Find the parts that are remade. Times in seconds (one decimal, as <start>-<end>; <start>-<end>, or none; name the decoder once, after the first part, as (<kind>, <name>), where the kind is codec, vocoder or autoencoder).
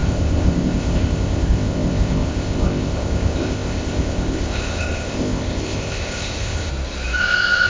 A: 0.0-6.7 (codec, ZipCodec); 7.2-7.7